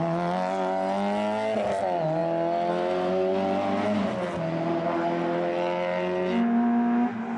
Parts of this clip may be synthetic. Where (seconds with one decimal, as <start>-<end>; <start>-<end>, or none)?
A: none